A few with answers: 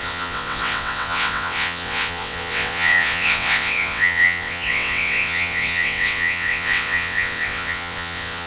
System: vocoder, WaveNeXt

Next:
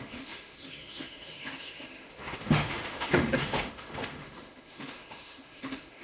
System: autoencoder, DAC-VAE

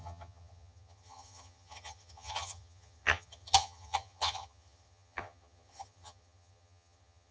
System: vocoder, HiFi-GAN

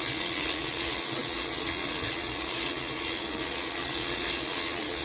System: vocoder, Vocos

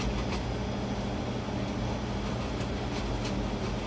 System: none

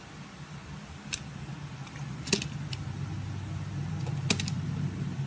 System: none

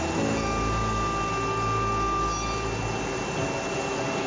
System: none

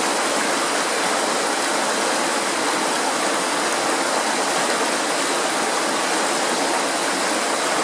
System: none